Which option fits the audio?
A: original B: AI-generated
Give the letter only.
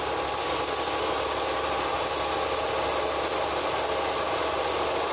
A